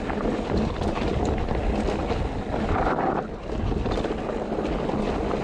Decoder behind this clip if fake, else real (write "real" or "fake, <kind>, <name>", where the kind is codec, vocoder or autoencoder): real